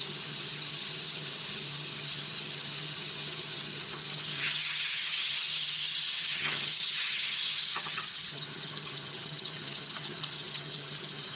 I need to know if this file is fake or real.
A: fake